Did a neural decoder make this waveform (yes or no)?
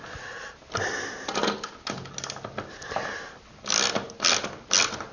no